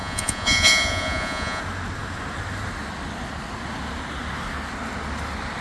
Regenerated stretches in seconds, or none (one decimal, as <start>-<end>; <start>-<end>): 0.0-1.6